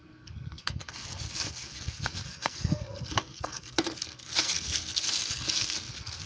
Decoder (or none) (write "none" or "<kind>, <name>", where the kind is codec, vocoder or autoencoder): codec, SNAC